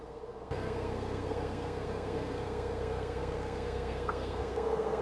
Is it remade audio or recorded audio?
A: remade